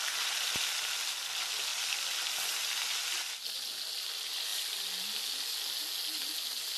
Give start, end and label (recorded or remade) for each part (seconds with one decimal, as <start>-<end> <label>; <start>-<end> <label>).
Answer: 0.0-6.8 recorded